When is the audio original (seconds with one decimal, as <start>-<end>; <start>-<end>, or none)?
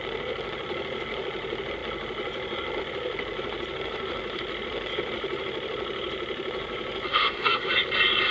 0.0-7.1; 7.7-8.3